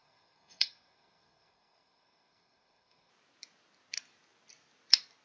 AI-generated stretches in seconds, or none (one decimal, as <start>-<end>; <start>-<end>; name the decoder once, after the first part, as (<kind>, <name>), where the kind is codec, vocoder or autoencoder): 0.0-3.1 (codec, SNAC)